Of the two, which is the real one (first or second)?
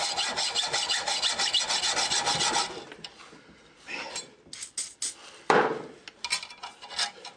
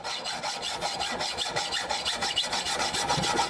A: first